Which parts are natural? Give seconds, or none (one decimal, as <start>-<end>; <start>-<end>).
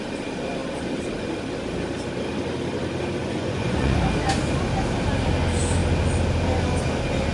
0.0-3.2; 4.0-7.3